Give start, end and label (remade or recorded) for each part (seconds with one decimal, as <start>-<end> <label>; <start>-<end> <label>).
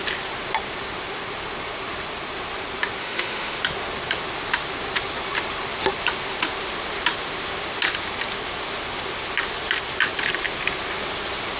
0.0-3.0 recorded; 3.0-3.6 remade; 3.6-11.6 recorded